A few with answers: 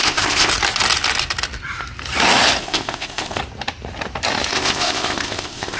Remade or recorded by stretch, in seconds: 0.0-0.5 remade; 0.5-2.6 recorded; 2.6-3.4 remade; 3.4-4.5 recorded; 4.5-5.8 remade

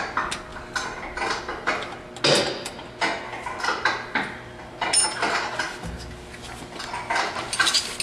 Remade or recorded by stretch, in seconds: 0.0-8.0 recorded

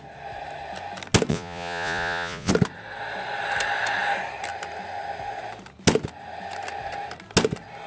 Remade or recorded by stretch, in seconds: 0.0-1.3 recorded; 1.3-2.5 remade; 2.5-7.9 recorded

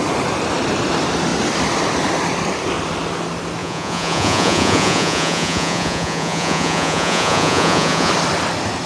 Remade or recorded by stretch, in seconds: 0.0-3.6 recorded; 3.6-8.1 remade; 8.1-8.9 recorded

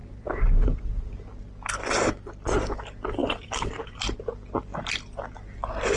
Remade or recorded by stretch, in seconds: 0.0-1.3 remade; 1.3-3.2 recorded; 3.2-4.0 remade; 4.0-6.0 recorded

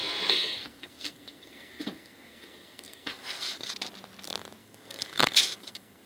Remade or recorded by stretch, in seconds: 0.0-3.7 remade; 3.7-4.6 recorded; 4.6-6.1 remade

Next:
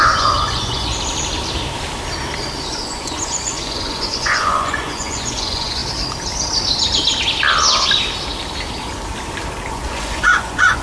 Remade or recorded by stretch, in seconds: 0.0-0.9 remade; 0.9-2.7 recorded; 2.7-5.8 remade; 5.8-9.7 recorded; 9.7-10.8 remade